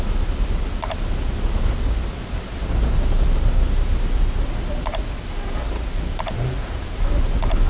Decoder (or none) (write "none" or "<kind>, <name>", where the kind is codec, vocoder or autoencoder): none